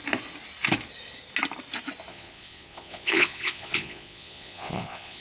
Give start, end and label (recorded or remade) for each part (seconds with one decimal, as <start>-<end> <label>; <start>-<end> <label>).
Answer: 0.0-2.1 recorded; 2.1-5.2 remade